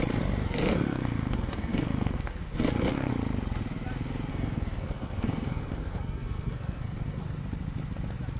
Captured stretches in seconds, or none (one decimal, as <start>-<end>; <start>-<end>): 0.0-0.4; 3.1-4.3; 7.4-8.4